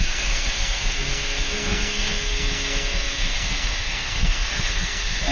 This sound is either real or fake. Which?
fake